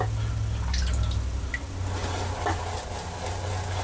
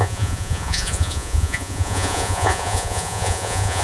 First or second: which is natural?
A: first